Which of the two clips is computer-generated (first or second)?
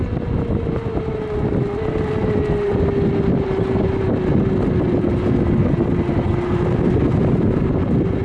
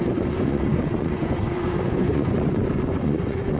second